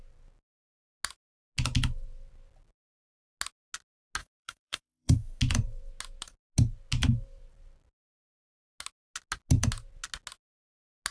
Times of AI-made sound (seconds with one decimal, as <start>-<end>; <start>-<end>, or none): 4.2-5.4

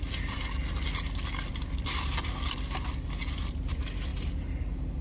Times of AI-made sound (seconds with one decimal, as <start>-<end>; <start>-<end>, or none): 0.0-4.1

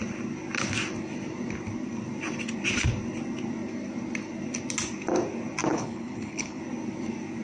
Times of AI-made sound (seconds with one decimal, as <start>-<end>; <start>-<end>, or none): 5.7-6.6

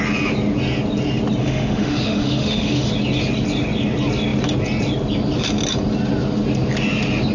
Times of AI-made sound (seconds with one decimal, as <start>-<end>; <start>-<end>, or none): 1.4-2.9